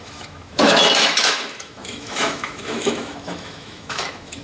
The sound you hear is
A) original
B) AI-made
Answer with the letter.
B